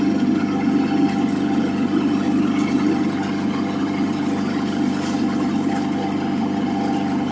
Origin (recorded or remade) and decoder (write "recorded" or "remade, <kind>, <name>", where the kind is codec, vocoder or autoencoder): recorded